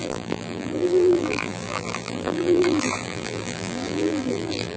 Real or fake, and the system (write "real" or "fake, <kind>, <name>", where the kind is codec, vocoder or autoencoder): fake, vocoder, BigVGAN v2